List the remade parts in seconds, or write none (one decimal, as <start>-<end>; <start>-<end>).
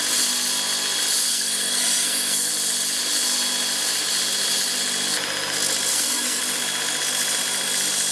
1.3-2.5; 5.9-6.4